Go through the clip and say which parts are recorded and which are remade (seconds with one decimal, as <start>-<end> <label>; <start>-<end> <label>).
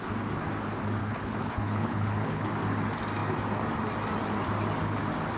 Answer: 0.0-1.0 recorded; 1.0-2.5 remade; 2.5-5.4 recorded